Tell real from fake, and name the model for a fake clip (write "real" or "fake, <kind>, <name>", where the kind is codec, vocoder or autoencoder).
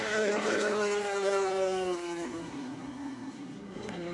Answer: fake, codec, SNAC